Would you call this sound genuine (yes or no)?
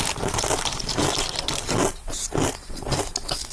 yes